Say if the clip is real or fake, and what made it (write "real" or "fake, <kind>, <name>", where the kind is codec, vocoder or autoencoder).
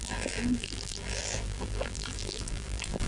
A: fake, vocoder, BigVGAN v2